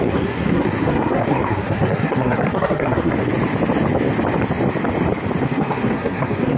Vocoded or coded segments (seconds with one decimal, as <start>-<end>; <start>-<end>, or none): 0.0-3.1; 5.4-6.6